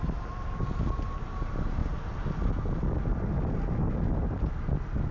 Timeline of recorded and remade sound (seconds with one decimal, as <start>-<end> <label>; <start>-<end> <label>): 0.0-5.1 recorded